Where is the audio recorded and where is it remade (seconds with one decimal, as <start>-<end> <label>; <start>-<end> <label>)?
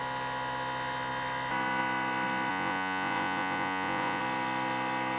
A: 0.0-2.5 recorded; 2.5-4.2 remade; 4.2-5.2 recorded